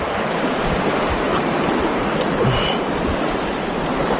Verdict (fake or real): real